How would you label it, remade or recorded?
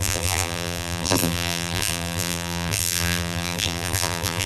remade